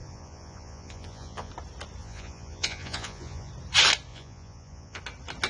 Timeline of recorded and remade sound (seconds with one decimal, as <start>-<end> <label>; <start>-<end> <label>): 0.0-1.5 remade; 1.5-2.0 recorded; 2.0-3.5 remade; 3.5-4.1 recorded; 4.1-5.0 remade; 5.0-5.5 recorded